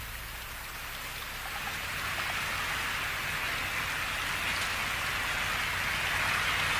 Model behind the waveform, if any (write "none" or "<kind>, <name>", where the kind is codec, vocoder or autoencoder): none